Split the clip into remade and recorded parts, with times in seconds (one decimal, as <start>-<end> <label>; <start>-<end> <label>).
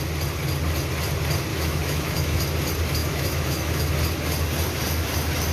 0.0-1.5 recorded; 1.5-2.4 remade; 2.4-3.0 recorded; 3.0-3.9 remade; 3.9-5.5 recorded